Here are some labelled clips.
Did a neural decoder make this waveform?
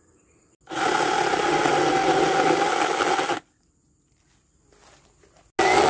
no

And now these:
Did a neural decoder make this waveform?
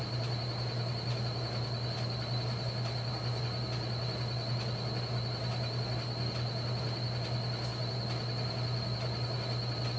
no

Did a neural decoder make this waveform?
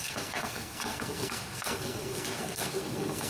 yes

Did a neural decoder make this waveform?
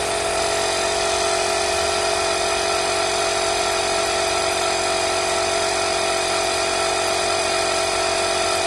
no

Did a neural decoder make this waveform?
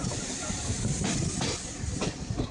no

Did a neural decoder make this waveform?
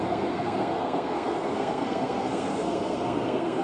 yes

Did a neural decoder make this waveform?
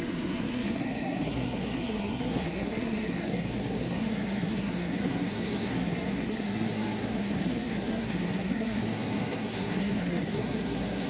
yes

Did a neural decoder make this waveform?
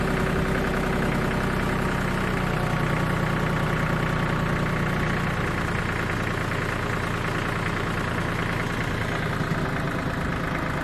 no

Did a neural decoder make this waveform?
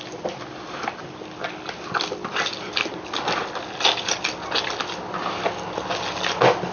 no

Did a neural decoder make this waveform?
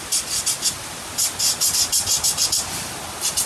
no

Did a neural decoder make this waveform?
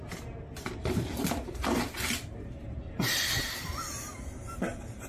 no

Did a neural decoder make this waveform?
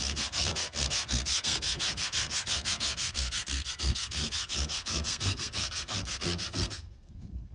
yes